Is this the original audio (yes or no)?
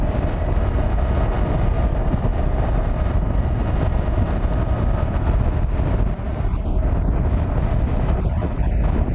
yes